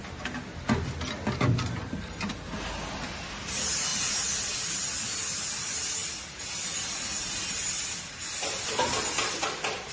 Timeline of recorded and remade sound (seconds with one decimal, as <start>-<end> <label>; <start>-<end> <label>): 0.0-9.9 recorded